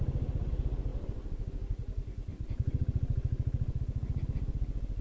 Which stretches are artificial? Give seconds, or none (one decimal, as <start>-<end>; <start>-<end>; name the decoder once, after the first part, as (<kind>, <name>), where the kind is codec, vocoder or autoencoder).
0.9-1.5 (vocoder, BigVGAN v2); 2.3-3.8